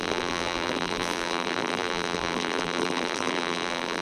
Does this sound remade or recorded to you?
remade